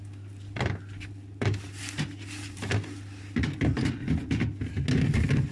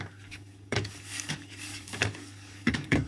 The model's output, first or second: second